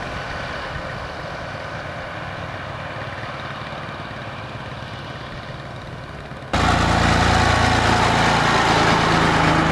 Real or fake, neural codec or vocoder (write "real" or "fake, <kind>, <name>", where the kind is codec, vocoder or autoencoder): real